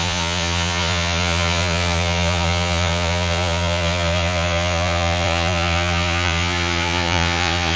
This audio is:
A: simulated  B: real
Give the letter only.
A